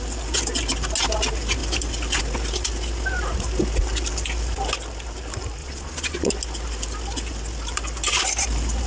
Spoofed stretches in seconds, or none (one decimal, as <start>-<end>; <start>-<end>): 5.6-6.3